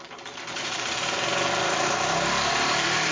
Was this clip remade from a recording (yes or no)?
yes